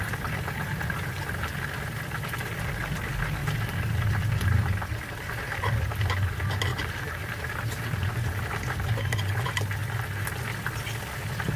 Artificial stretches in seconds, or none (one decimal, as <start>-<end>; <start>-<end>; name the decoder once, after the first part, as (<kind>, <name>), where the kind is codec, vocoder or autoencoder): 6.7-8.6 (vocoder, BigVGAN v2)